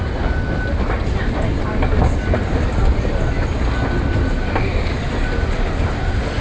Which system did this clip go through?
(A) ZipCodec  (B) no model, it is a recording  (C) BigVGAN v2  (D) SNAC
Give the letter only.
B